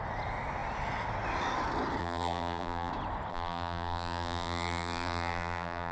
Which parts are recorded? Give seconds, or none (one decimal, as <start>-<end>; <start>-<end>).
0.0-2.0; 2.9-3.3